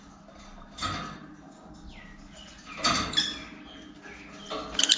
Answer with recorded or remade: recorded